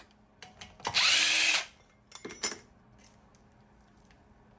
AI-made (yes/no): no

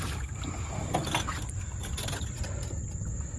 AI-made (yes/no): no